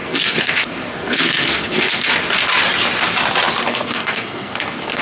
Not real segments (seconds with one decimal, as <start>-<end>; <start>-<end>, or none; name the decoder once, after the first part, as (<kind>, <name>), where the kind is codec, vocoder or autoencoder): 0.0-2.1 (codec, SNAC); 3.7-5.0